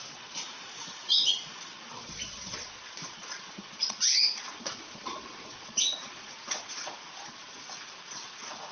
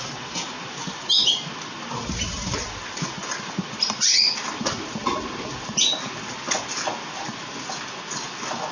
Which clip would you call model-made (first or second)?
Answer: first